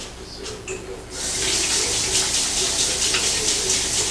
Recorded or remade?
recorded